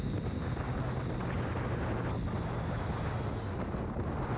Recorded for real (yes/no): yes